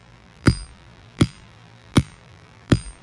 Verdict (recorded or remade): remade